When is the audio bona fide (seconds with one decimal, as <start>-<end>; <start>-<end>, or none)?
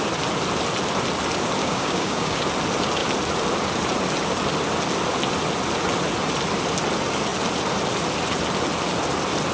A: 0.0-1.6; 2.4-9.5